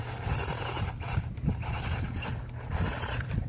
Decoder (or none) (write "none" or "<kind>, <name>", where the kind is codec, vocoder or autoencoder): vocoder, BigVGAN v2